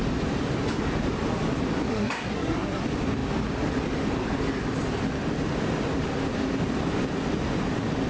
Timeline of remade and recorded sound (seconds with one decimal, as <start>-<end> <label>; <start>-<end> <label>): 0.0-1.9 recorded; 1.9-2.8 remade; 2.8-8.1 recorded